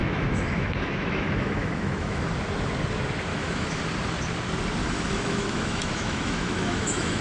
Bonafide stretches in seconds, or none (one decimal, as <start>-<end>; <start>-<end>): 2.3-3.3; 3.8-4.8